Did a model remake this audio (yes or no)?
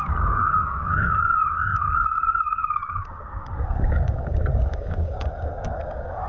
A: yes